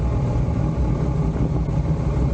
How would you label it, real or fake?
real